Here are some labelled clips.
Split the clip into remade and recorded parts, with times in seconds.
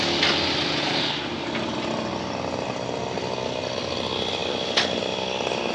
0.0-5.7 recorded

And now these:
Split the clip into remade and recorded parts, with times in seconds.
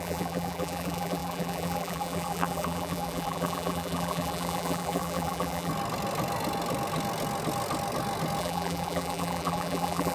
0.0-5.7 remade; 5.7-8.4 recorded; 8.4-10.1 remade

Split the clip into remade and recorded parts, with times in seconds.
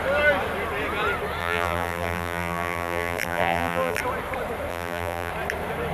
0.0-1.4 recorded; 1.4-4.0 remade; 4.0-4.7 recorded; 4.7-5.3 remade; 5.3-5.9 recorded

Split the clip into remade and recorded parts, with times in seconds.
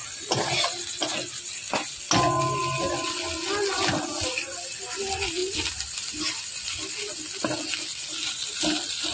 0.0-9.1 recorded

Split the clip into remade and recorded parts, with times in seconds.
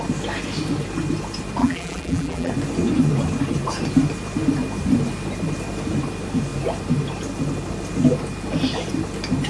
0.0-1.6 recorded; 1.6-2.5 remade; 2.5-9.5 recorded